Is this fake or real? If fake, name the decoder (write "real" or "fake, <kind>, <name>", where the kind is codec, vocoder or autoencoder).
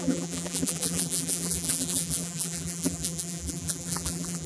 fake, vocoder, BigVGAN v2